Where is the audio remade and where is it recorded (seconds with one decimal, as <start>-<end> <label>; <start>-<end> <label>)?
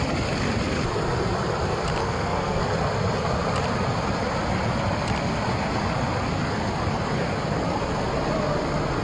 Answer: 0.0-2.0 recorded; 2.0-2.6 remade; 2.6-9.0 recorded